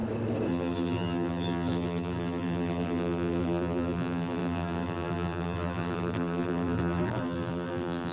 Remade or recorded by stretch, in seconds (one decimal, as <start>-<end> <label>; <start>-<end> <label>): 0.0-0.5 recorded; 0.5-8.1 remade